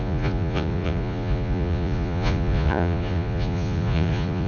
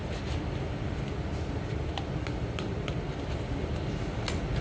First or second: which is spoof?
first